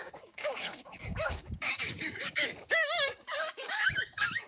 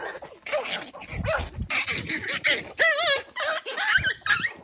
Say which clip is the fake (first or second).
first